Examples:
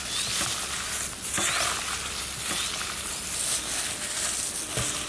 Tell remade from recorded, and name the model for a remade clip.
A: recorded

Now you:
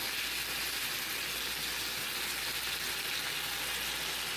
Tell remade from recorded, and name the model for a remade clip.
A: recorded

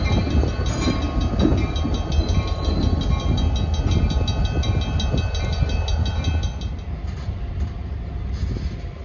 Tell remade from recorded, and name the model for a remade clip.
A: recorded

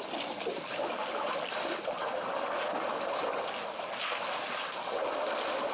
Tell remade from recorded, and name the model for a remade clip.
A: recorded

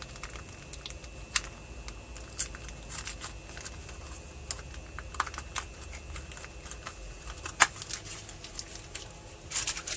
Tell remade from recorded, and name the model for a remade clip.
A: recorded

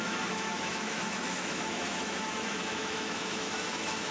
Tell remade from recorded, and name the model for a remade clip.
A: remade, autoencoder, DAC-VAE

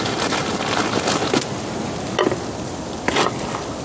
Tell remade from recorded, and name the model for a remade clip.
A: recorded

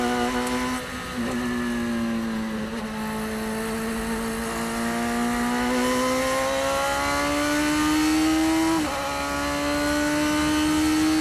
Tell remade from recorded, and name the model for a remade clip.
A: recorded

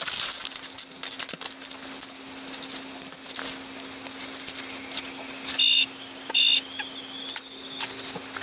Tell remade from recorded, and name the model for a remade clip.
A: recorded